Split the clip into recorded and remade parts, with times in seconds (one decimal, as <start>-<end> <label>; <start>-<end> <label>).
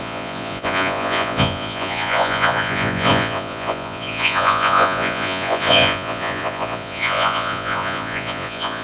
0.0-8.8 remade